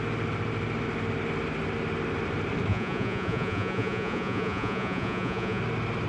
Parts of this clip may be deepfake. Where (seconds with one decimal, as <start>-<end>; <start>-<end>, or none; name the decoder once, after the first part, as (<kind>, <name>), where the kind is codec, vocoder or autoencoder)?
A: 2.7-5.6 (vocoder, Vocos)